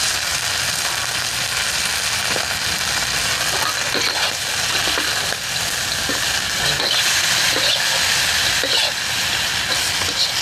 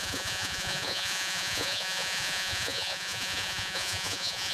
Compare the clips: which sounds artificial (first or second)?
second